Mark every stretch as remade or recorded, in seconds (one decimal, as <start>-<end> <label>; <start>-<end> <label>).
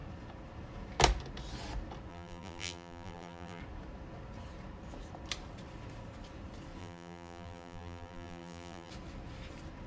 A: 0.0-2.1 recorded; 2.1-3.6 remade; 3.6-6.8 recorded; 6.8-8.9 remade; 8.9-9.9 recorded